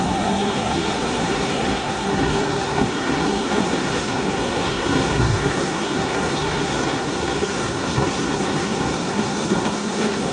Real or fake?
fake